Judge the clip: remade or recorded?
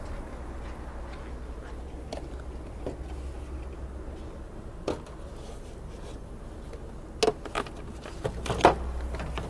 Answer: recorded